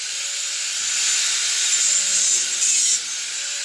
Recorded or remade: recorded